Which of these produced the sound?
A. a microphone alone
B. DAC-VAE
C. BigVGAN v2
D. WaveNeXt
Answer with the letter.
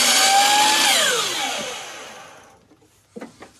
A